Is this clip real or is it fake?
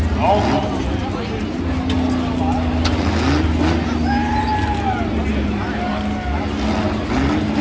real